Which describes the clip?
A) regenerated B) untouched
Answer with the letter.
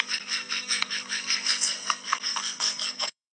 A